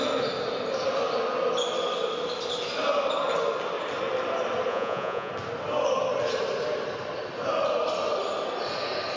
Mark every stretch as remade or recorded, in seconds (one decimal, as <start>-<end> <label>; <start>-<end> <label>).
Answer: 0.0-4.7 recorded; 4.7-5.3 remade; 5.3-9.2 recorded